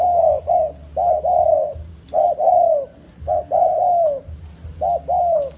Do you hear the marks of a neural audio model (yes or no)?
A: no